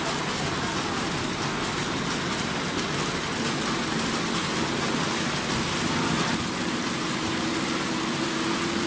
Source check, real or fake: real